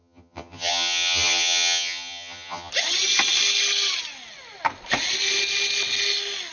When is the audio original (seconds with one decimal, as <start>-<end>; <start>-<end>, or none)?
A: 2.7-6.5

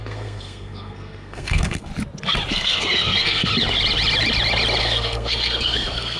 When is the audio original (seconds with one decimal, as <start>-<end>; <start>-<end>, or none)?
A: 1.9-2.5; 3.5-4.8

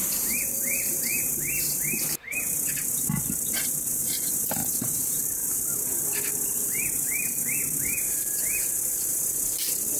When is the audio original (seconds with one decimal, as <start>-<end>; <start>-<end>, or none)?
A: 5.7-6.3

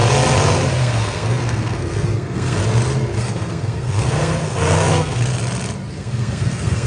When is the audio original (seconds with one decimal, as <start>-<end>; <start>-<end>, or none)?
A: 0.0-0.7; 2.6-3.2; 5.3-5.9

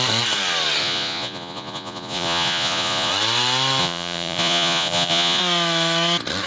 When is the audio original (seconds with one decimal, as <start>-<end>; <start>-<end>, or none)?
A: 0.0-0.8; 3.1-3.8; 5.4-6.5

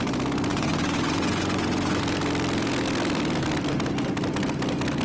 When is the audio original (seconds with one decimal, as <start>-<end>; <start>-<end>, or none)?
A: 0.0-0.5; 2.0-5.0

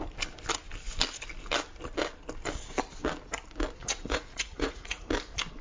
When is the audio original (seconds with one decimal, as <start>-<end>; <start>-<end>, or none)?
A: 0.0-3.8; 5.1-5.6

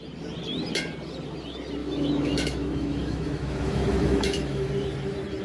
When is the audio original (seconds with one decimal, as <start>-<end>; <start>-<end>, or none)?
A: 0.0-1.8; 4.7-5.4